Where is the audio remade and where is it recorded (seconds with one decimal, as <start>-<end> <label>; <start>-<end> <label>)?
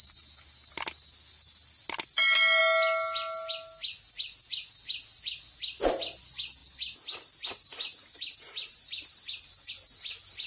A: 0.0-6.6 recorded; 6.6-9.7 remade; 9.7-10.5 recorded